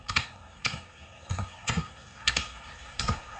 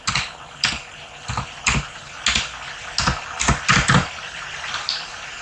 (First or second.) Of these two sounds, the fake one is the first